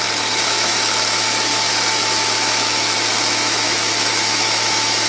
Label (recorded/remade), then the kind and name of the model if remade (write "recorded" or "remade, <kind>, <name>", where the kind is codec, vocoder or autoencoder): remade, autoencoder, DAC-VAE